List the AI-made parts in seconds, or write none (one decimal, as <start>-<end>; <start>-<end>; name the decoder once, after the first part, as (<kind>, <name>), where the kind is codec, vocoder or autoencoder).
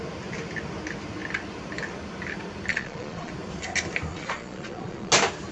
2.7-3.3 (vocoder, Vocos); 4.1-5.1